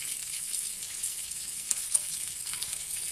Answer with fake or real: fake